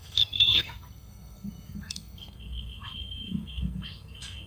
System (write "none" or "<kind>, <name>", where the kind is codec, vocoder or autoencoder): codec, SNAC